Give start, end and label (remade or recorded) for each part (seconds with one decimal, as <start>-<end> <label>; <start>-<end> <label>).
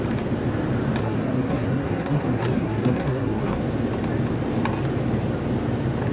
0.0-1.0 recorded; 1.0-3.6 remade; 3.6-6.1 recorded